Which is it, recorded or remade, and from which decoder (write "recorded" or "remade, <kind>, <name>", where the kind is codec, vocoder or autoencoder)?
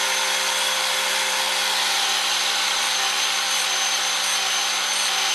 remade, vocoder, BigVGAN v2